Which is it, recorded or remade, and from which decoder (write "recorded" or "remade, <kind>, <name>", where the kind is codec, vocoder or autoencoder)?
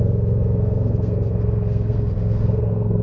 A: remade, codec, SNAC